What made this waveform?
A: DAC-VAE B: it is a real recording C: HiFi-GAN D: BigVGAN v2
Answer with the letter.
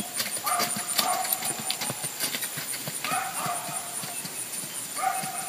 B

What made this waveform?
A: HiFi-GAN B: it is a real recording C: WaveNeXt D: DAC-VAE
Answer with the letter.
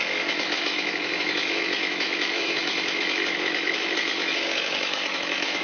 D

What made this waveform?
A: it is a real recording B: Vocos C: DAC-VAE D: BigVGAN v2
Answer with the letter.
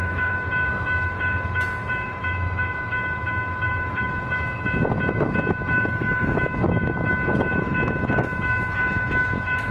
C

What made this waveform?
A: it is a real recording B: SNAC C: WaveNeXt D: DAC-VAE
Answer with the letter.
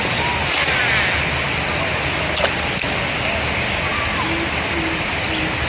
A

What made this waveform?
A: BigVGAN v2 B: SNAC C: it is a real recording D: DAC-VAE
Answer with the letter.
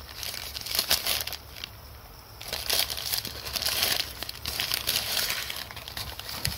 C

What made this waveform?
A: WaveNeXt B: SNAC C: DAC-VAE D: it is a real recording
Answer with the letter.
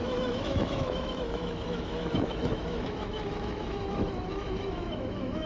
C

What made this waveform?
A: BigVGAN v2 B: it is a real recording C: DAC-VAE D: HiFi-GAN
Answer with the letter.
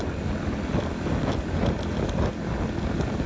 B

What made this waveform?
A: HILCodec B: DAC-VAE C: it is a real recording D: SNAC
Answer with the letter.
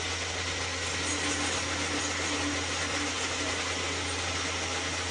C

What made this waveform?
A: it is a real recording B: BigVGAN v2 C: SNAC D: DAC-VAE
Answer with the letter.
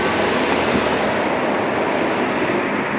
A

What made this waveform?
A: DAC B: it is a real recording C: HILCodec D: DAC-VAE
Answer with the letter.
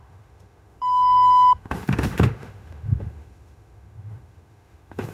D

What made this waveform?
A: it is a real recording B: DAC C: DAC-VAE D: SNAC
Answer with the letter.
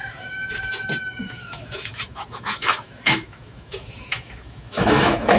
C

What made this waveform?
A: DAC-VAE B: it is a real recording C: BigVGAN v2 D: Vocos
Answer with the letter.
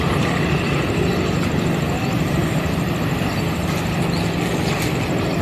B